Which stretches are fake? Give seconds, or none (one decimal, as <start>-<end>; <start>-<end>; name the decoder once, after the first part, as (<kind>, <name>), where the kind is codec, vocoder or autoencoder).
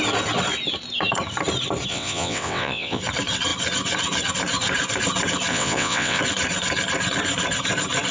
1.9-3.0 (vocoder, WaveNeXt); 5.5-6.2